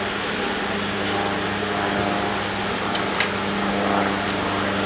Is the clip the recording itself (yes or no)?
yes